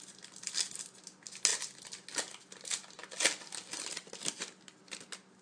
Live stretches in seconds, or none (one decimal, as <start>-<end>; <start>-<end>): 0.0-5.4